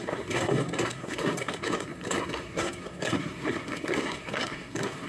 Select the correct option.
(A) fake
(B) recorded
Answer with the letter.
A